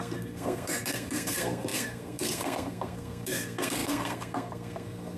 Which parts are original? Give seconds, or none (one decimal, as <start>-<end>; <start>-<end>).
none